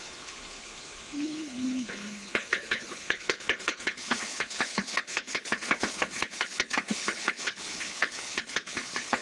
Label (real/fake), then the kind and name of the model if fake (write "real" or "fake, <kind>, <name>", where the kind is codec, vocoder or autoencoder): fake, codec, HILCodec